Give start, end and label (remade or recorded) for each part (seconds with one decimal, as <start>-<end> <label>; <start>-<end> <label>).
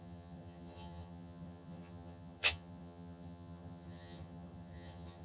0.0-5.2 remade